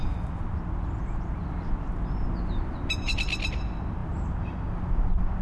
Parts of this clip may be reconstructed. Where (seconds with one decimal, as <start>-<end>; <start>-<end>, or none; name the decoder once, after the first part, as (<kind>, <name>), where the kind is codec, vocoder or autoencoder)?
none